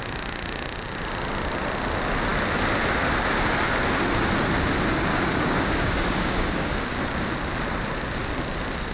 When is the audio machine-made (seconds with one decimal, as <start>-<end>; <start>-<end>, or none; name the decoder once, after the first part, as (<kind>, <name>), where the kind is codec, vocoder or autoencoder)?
5.1-6.7 (codec, DAC)